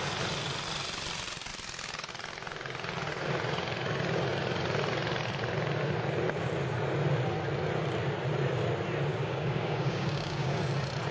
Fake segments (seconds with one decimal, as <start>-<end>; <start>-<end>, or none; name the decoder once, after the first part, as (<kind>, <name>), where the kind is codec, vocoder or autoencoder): 9.1-10.6 (codec, DAC)